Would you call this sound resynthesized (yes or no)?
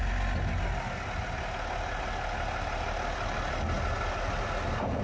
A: no